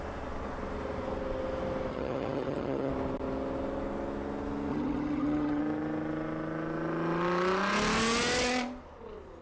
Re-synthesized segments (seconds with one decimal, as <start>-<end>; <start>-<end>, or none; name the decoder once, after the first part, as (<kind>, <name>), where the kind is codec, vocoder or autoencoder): 1.9-2.9 (vocoder, HiFi-GAN); 4.7-5.6